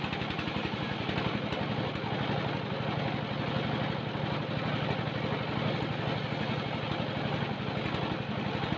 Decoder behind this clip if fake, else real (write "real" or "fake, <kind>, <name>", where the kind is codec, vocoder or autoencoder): real